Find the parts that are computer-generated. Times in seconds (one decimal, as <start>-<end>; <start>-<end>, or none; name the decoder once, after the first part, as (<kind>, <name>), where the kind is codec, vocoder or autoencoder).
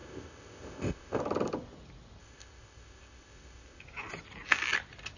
0.0-1.2 (codec, ZipCodec); 2.2-3.8